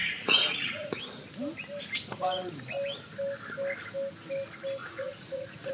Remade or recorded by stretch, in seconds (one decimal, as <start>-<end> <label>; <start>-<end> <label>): 0.0-1.0 remade; 1.0-4.8 recorded; 4.8-5.7 remade